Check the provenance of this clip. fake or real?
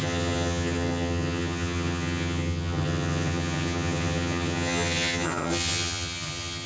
fake